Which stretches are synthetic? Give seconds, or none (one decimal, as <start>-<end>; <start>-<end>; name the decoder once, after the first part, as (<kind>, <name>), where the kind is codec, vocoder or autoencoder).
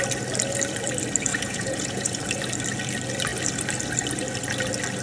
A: 1.3-2.2 (vocoder, Vocos)